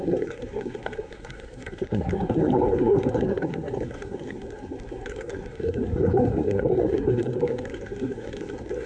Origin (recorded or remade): remade